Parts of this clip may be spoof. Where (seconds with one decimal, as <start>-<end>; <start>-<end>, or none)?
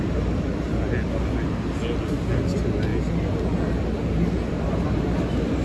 none